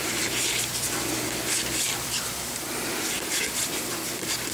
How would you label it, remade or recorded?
remade